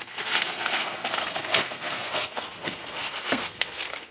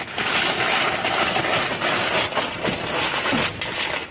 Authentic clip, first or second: second